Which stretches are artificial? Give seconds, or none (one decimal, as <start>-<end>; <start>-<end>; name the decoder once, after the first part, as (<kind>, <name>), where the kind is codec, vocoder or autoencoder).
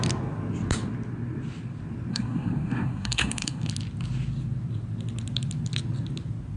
2.1-3.7 (codec, SNAC)